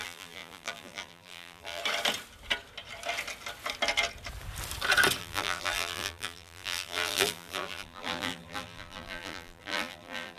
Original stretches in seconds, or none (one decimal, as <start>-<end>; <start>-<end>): 1.8-5.2